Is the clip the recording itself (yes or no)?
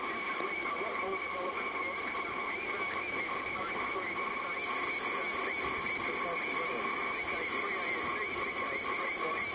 yes